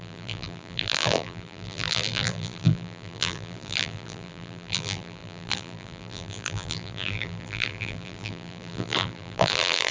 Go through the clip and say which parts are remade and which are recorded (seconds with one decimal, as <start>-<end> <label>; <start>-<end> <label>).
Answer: 0.0-9.9 remade